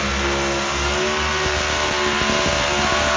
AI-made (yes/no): no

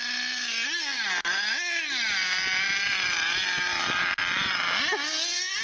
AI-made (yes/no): no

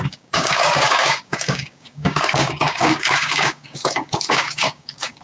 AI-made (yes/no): yes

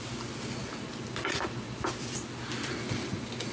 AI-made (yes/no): no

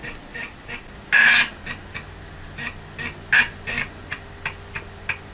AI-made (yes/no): no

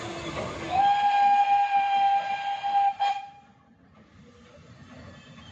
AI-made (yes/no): no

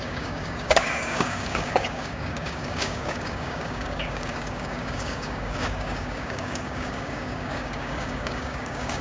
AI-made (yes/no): yes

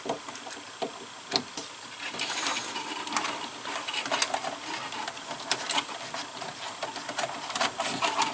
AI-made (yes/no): no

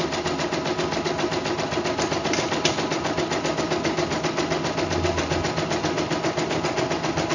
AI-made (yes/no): no